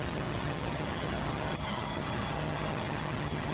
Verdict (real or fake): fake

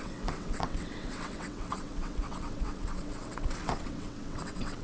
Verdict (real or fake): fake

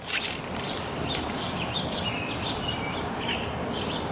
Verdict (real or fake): fake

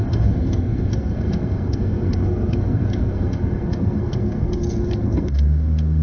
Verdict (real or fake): fake